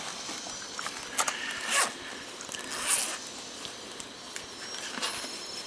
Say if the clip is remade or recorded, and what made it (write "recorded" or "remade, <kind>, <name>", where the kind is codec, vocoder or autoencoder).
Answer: recorded